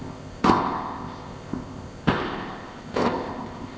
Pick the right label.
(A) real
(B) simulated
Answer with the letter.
B